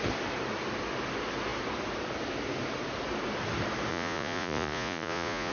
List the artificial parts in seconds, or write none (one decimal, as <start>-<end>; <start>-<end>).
3.9-5.5